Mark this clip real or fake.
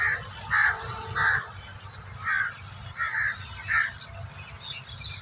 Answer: real